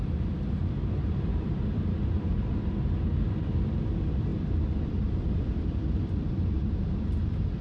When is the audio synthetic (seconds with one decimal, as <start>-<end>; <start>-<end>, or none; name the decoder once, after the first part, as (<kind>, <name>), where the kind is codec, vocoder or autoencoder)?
0.0-2.3 (vocoder, BigVGAN v2); 3.2-7.6